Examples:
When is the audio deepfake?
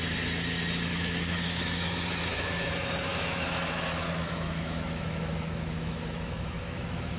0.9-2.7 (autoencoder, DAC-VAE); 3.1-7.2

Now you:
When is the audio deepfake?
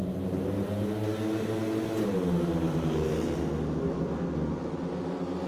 none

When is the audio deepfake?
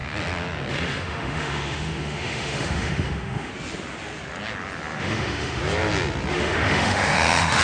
0.7-3.5 (autoencoder, DAC-VAE); 5.0-5.6; 6.3-7.6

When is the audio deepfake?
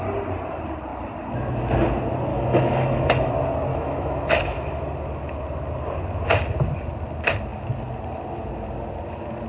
2.3-3.3 (autoencoder, DAC-VAE); 3.7-4.8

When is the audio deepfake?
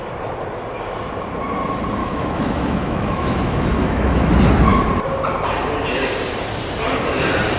2.0-4.3 (autoencoder, DAC-VAE)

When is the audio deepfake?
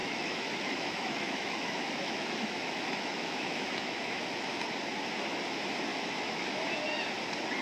0.0-4.6 (autoencoder, DAC-VAE); 5.9-6.6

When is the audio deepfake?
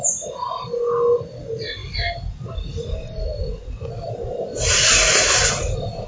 none